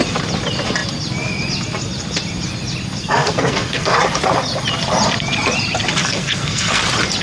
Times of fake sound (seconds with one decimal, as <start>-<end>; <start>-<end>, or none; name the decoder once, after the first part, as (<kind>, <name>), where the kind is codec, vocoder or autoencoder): 3.0-4.0 (codec, SNAC); 6.0-6.8